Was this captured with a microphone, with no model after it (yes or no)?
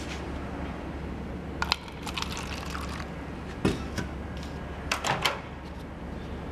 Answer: yes